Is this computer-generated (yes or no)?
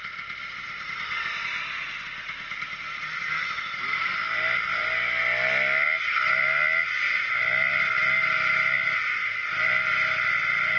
no